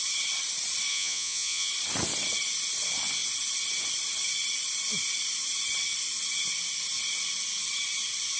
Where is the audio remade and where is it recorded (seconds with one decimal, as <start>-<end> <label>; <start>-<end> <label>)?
0.0-0.9 recorded; 0.9-1.7 remade; 1.7-8.4 recorded